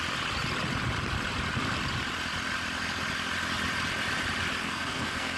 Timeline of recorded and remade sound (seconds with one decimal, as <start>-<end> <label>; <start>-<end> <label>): 0.0-4.6 recorded; 4.6-5.4 remade